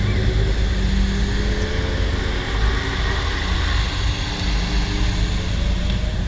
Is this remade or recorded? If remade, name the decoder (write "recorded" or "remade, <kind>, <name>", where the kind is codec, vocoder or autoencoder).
recorded